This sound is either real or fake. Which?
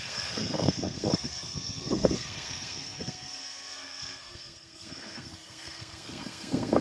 fake